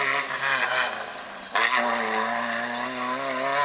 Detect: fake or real real